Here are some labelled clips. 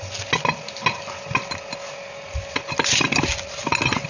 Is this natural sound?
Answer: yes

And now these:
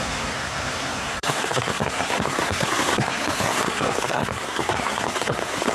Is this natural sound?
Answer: no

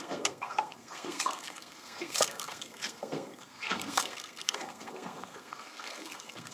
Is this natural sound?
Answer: no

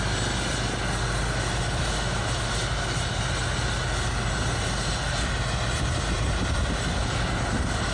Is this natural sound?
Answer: yes